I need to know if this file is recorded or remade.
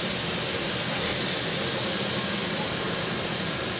recorded